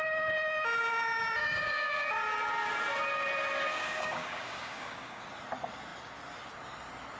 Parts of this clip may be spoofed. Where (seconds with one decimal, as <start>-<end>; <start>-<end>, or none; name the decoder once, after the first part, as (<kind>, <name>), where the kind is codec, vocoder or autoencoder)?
1.4-2.1 (codec, DAC); 3.7-5.2